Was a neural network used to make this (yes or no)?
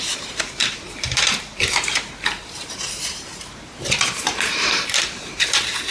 yes